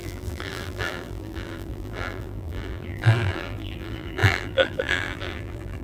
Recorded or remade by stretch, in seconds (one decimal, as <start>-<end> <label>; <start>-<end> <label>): 0.0-5.8 remade